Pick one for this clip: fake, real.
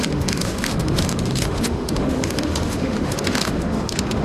fake